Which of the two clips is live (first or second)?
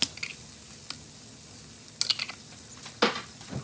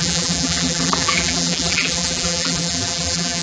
first